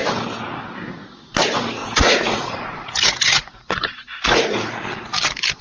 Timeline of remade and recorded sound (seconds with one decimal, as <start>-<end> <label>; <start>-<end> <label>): 0.0-1.8 recorded; 1.8-4.7 remade; 4.7-5.6 recorded